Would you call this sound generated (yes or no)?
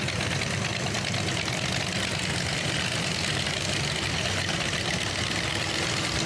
no